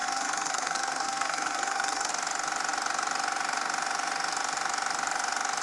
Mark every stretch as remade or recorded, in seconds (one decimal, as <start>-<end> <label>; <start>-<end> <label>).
0.0-2.1 remade; 2.1-5.6 recorded